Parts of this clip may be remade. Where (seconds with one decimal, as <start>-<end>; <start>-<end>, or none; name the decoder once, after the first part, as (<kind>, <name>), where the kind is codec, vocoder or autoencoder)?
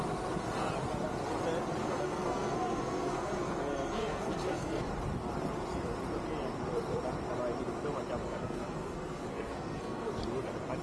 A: 1.8-4.9 (codec, SNAC); 8.2-10.2